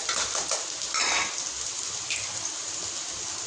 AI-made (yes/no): no